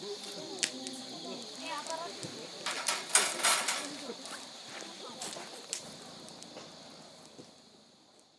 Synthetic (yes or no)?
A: no